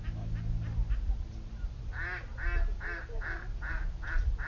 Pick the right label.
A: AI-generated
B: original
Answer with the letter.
B